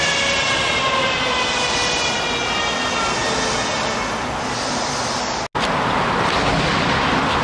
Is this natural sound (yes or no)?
yes